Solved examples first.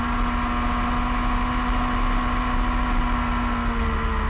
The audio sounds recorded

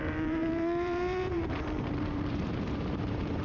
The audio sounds remade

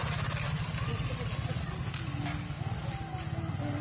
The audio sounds recorded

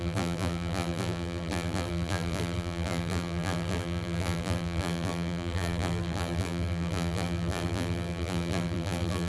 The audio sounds remade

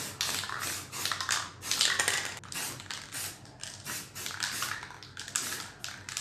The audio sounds recorded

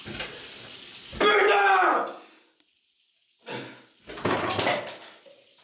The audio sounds recorded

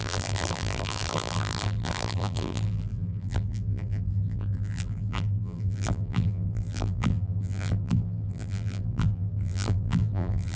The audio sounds remade